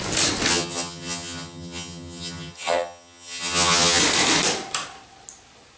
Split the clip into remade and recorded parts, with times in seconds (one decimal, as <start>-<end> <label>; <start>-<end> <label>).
0.0-0.5 recorded; 0.5-4.0 remade; 4.0-5.8 recorded